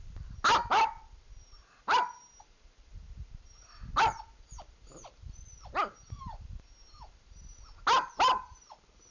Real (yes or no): yes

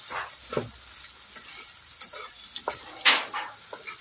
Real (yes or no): yes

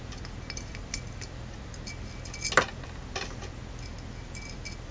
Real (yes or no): yes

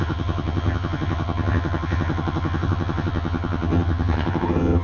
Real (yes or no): no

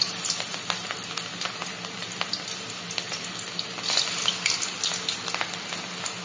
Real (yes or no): yes